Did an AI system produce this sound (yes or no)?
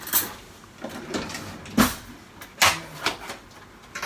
no